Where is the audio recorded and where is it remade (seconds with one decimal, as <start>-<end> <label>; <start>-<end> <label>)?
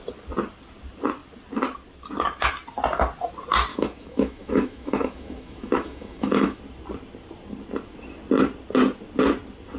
0.0-3.7 recorded; 3.7-6.6 remade; 6.6-9.8 recorded